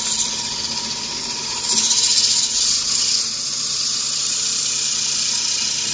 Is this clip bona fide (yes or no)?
yes